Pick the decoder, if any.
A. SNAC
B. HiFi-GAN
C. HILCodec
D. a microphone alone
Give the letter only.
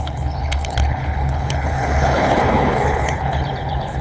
C